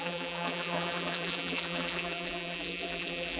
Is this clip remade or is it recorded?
remade